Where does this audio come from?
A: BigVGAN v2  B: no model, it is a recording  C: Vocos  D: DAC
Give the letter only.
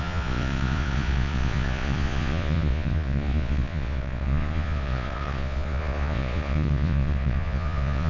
C